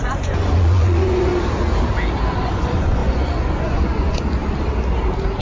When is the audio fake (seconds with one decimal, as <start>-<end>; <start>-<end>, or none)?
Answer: 0.0-1.3; 2.4-4.4